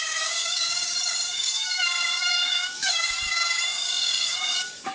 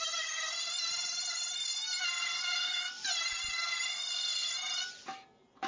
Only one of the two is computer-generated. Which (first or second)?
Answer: first